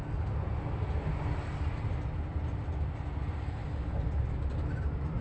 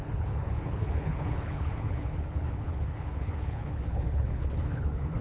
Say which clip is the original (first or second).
first